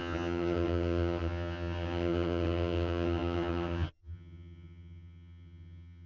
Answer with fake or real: fake